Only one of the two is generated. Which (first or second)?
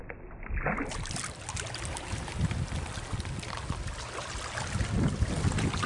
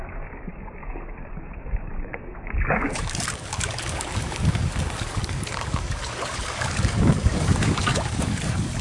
second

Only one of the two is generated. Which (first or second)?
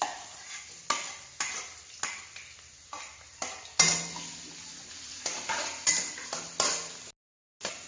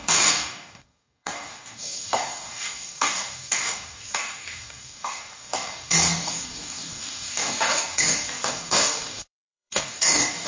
second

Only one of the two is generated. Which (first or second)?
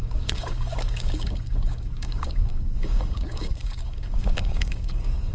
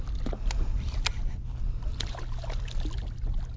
first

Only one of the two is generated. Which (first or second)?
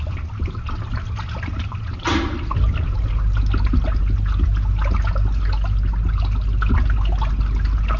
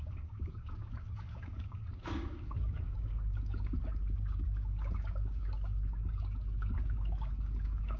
second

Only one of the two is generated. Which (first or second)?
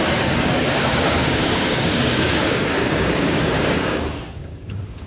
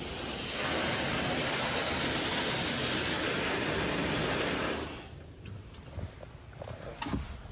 first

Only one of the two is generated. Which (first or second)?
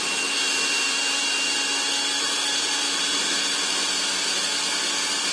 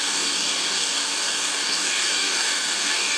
second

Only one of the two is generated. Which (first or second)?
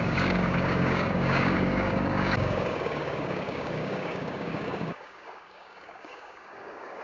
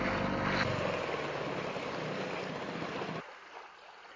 first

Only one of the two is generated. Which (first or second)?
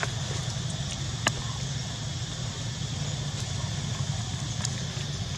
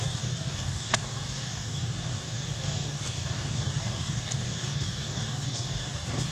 second